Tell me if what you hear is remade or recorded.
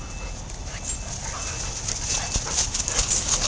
recorded